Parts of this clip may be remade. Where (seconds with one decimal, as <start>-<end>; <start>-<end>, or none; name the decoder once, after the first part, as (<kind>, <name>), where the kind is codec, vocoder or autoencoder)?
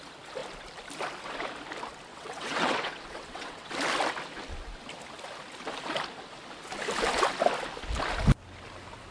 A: 2.1-3.7 (vocoder, WaveNeXt)